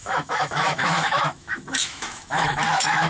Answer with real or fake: fake